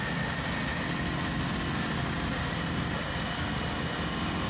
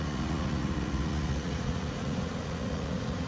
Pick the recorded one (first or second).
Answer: first